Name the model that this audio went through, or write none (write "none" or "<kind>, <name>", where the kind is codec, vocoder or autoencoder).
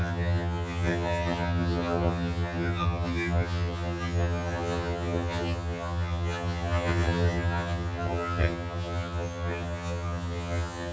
vocoder, HiFi-GAN